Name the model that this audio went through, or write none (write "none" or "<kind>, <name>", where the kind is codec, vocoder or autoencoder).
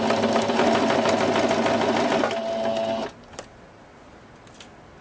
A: none